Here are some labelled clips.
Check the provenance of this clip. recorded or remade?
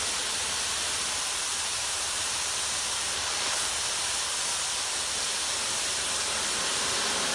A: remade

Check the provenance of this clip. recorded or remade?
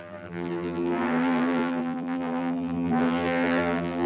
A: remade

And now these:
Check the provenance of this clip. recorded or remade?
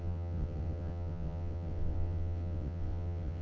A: remade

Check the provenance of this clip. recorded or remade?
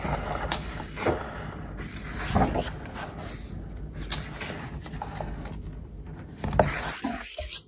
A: recorded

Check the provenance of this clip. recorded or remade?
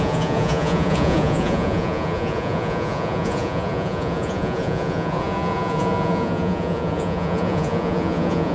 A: remade